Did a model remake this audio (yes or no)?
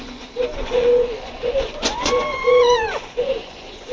yes